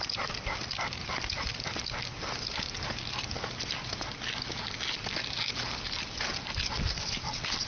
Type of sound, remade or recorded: recorded